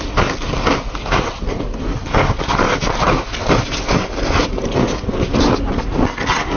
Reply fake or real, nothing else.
real